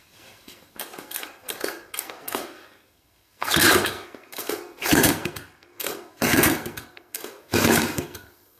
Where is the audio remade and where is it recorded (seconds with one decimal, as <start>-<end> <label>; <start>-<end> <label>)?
0.0-8.6 remade